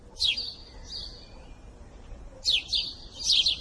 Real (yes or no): yes